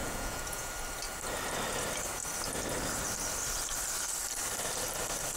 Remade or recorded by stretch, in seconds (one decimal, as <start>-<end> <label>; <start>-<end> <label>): 0.0-0.7 remade; 0.7-5.4 recorded